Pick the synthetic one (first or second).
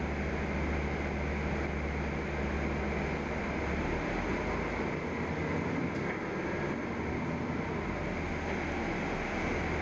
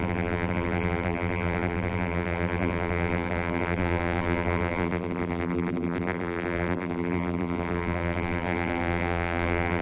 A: second